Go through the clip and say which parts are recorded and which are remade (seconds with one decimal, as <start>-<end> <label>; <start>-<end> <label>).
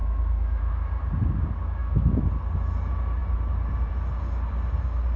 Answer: 0.0-0.8 remade; 0.8-1.8 recorded; 1.8-2.3 remade; 2.3-5.2 recorded